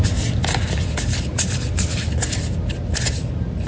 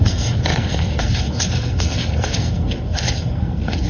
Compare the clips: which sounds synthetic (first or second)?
second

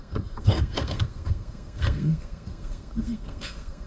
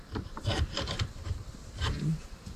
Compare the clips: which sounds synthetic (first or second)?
first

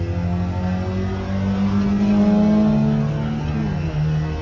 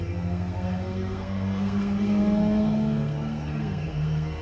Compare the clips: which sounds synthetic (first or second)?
second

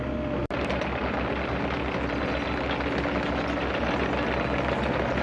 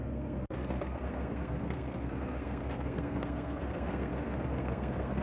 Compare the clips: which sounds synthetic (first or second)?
second